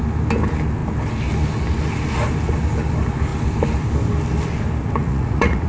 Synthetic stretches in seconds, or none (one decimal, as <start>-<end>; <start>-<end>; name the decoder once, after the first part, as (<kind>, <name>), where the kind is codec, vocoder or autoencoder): 5.0-5.7 (vocoder, Vocos)